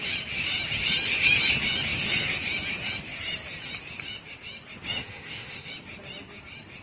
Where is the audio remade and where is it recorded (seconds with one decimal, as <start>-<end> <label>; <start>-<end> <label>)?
0.0-5.0 recorded; 5.0-5.7 remade; 5.7-6.8 recorded